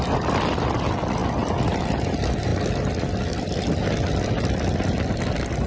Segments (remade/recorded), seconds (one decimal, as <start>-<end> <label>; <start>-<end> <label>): 0.0-5.7 recorded

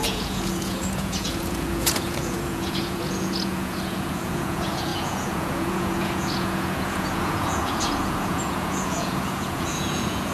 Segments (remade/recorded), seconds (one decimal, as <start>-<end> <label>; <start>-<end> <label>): 0.0-10.3 remade